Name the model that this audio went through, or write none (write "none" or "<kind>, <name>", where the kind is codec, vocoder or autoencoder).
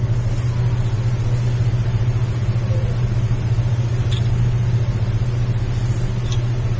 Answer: none